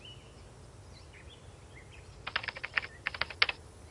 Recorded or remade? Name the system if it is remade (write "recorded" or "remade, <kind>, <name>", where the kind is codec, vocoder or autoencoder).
recorded